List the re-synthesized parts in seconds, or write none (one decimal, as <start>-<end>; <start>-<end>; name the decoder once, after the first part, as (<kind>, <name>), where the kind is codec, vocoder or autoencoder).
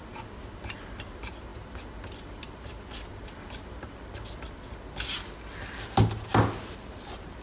none